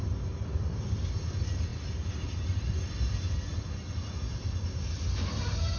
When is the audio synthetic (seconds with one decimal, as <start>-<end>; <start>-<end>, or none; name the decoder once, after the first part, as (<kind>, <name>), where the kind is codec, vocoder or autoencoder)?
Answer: none